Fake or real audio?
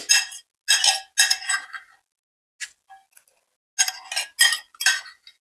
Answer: real